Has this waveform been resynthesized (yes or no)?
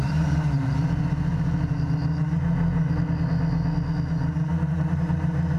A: no